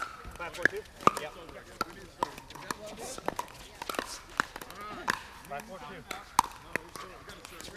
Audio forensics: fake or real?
real